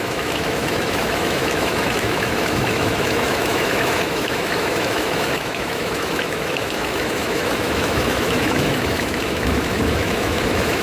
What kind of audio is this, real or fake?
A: fake